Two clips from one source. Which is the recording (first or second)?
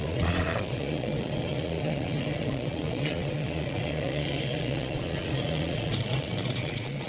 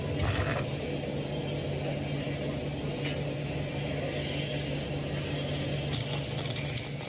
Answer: second